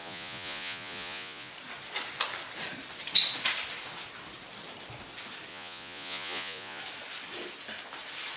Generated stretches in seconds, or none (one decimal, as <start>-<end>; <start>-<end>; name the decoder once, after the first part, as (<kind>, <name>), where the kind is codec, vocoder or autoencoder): 0.0-1.5 (vocoder, Vocos); 5.5-6.8